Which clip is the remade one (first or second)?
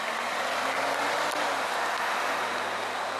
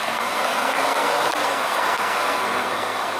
second